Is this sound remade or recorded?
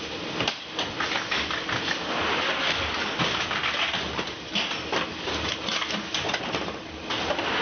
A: recorded